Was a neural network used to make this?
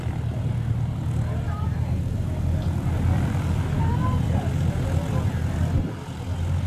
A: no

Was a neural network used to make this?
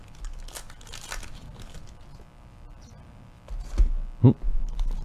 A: no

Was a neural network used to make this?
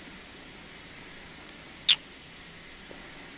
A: no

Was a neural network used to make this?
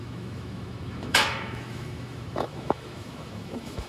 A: yes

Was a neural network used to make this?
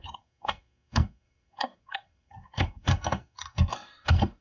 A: yes